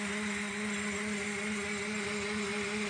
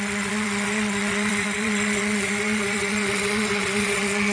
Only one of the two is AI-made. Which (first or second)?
second